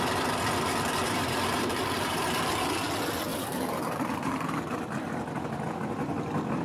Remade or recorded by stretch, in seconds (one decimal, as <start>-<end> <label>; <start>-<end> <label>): 0.0-1.0 recorded; 1.0-2.3 remade; 2.3-3.3 recorded; 3.3-4.7 remade; 4.7-6.6 recorded